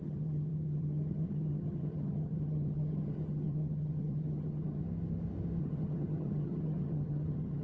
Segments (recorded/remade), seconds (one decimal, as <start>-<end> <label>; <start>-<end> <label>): 0.0-4.8 remade; 4.8-5.6 recorded; 5.6-7.6 remade